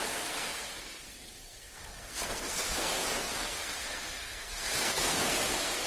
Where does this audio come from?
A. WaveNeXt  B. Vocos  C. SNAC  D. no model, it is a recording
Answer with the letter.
C